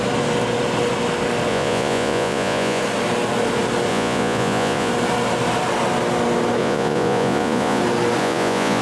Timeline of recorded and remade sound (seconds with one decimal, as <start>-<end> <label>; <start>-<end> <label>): 0.0-1.5 recorded; 1.5-2.8 remade; 2.8-3.9 recorded; 3.9-4.9 remade; 4.9-6.6 recorded; 6.6-7.8 remade; 7.8-8.2 recorded; 8.2-8.8 remade